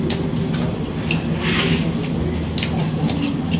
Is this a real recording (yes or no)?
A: yes